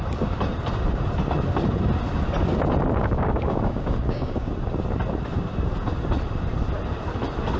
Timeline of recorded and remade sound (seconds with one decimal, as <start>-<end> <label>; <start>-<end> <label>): 0.0-3.0 recorded; 3.0-4.5 remade; 4.5-7.6 recorded

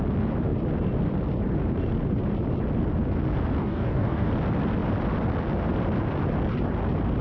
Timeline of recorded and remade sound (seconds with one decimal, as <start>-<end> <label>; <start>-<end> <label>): 0.0-3.6 recorded; 3.6-4.3 remade; 4.3-7.2 recorded

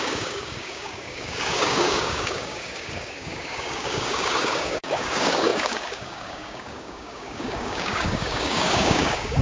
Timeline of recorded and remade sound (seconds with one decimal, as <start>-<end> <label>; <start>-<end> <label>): 0.0-9.4 remade

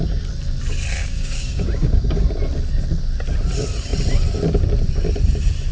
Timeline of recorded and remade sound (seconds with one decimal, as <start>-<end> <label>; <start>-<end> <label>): 0.0-1.0 recorded; 1.0-2.2 remade; 2.2-5.7 recorded

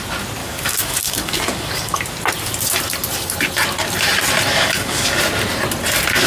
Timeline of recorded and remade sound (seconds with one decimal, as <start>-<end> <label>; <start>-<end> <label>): 0.0-0.4 recorded; 0.4-2.0 remade; 2.0-4.5 recorded; 4.5-5.2 remade; 5.2-6.3 recorded

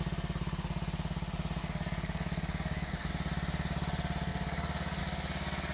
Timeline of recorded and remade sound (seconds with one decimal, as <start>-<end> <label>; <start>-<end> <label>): 0.0-1.6 recorded; 1.6-3.1 remade; 3.1-4.3 recorded; 4.3-5.0 remade; 5.0-5.7 recorded

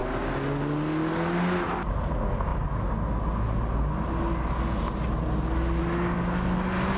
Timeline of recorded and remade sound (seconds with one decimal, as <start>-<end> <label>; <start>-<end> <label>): 0.0-7.0 recorded